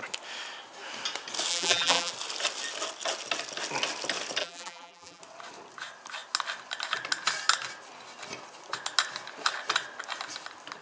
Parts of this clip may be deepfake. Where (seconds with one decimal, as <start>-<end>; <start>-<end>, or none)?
1.5-2.1; 4.4-5.2